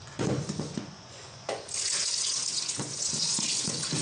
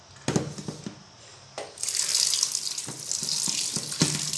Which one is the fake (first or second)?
first